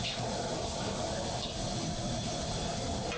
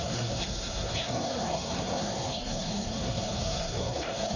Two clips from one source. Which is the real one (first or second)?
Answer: first